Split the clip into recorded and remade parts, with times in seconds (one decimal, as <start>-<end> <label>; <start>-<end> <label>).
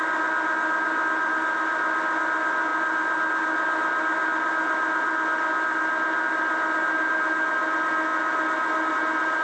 0.0-9.4 recorded